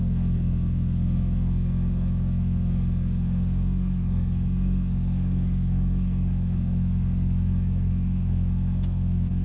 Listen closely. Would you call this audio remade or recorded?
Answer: remade